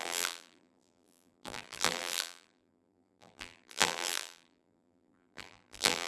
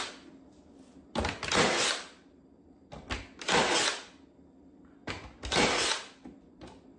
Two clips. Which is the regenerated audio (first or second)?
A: first